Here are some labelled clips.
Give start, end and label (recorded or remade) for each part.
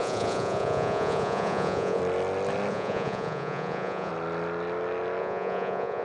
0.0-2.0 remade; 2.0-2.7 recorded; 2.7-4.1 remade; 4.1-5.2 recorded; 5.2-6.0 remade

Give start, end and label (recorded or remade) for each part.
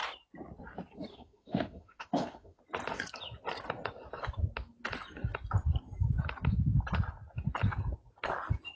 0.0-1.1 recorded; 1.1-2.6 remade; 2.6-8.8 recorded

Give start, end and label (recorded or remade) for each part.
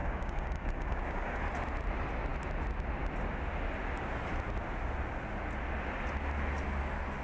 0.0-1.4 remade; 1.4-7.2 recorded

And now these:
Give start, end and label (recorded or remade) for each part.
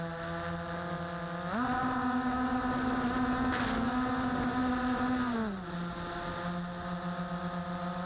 0.0-2.0 recorded; 2.0-2.6 remade; 2.6-8.1 recorded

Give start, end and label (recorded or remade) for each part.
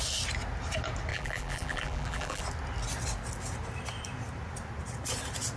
0.0-1.1 recorded; 1.1-2.4 remade; 2.4-5.6 recorded